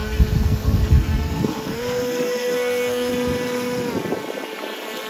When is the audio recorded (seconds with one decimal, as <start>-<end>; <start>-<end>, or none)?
3.1-5.1